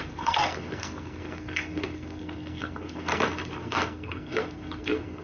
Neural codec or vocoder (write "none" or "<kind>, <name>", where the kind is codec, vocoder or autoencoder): codec, SNAC